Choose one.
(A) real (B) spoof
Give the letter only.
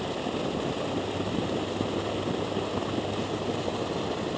A